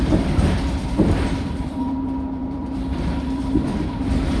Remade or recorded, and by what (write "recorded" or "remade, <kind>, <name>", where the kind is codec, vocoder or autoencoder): remade, vocoder, BigVGAN v2